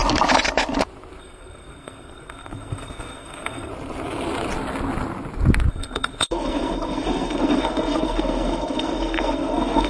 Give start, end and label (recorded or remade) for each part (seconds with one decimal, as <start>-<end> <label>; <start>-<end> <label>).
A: 0.0-1.2 recorded; 1.2-3.7 remade; 3.7-5.7 recorded; 5.7-9.9 remade